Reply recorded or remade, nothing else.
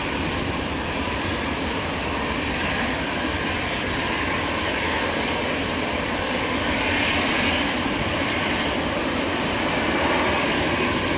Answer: recorded